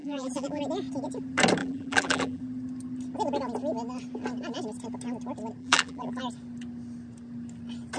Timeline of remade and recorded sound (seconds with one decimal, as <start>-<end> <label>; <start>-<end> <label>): 0.0-0.6 remade; 0.6-1.6 recorded; 1.6-2.4 remade; 2.4-5.6 recorded; 5.6-6.2 remade; 6.2-8.0 recorded

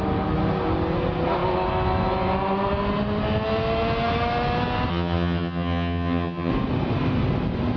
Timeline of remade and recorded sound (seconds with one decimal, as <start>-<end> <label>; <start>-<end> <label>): 0.0-4.9 recorded; 4.9-6.5 remade; 6.5-7.8 recorded

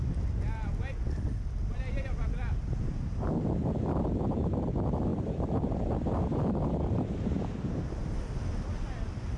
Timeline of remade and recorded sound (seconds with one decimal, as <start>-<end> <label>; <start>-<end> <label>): 0.0-6.3 recorded; 6.3-7.4 remade; 7.4-9.4 recorded

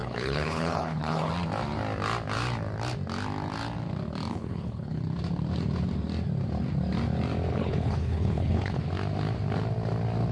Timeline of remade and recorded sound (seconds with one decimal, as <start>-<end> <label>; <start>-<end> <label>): 0.0-1.3 remade; 1.3-4.3 recorded; 4.3-5.0 remade; 5.0-7.5 recorded; 7.5-8.8 remade; 8.8-10.3 recorded

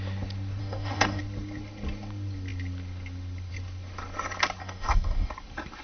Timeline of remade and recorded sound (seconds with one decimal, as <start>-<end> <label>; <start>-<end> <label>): 0.0-0.6 recorded; 0.6-1.2 remade; 1.2-4.6 recorded; 4.6-5.3 remade; 5.3-5.8 recorded